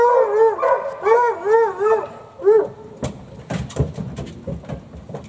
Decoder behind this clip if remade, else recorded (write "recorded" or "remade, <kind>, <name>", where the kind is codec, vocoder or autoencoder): recorded